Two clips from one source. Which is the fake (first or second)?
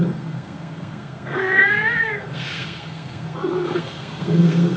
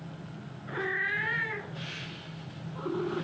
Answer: first